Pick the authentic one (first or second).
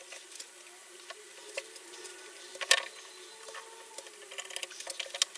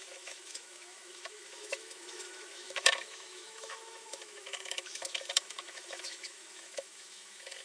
first